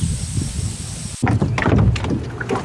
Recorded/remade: recorded